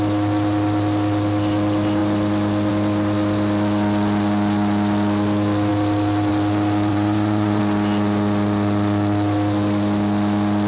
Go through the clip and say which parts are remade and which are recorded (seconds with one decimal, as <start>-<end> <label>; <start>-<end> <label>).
0.0-6.9 recorded; 6.9-7.6 remade; 7.6-10.7 recorded